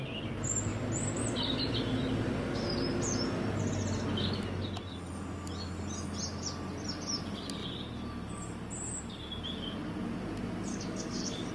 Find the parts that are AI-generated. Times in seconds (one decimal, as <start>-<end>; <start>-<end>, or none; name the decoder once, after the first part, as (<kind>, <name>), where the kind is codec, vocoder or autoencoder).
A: 10.7-11.5 (codec, DAC)